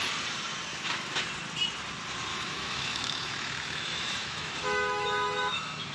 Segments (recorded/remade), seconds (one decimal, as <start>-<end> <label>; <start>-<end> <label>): 0.0-0.7 recorded; 0.7-1.2 remade; 1.2-2.3 recorded; 2.3-5.9 remade